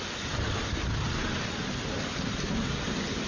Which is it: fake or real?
real